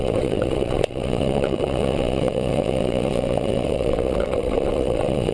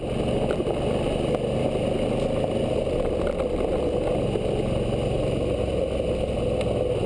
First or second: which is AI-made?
first